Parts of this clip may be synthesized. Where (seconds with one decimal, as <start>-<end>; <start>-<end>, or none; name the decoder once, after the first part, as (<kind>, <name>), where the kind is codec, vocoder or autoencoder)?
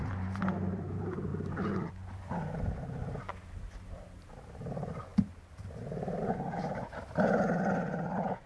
0.0-1.3 (vocoder, BigVGAN v2); 1.9-8.5